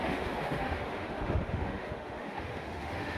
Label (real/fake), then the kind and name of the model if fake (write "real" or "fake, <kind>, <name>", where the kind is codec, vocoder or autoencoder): fake, autoencoder, DAC-VAE